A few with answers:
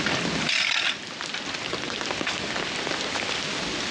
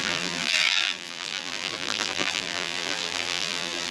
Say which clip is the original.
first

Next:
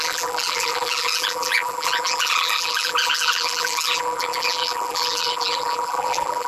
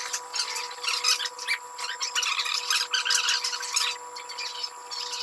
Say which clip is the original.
second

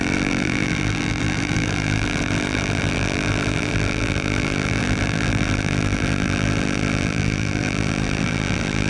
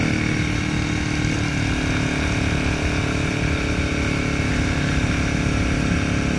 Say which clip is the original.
second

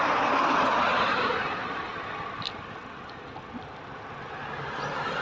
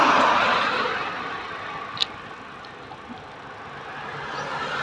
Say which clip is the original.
second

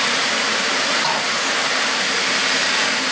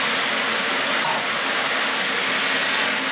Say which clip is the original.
second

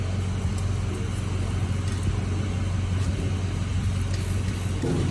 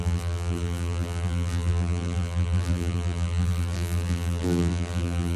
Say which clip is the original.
first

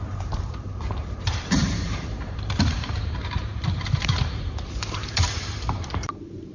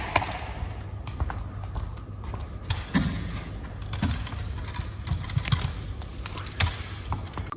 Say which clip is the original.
second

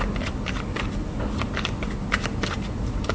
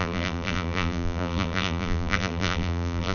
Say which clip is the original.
first